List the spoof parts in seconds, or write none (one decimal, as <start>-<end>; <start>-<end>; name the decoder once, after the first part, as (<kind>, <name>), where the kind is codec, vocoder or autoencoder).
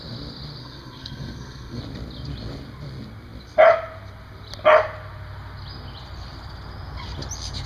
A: 0.6-1.8 (codec, SNAC)